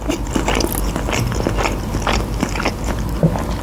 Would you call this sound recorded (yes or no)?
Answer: yes